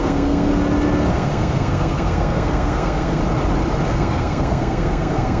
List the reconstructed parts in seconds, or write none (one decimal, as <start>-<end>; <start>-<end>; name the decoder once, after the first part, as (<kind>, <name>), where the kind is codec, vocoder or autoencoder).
0.0-0.5 (codec, SNAC); 1.1-3.2; 3.9-5.4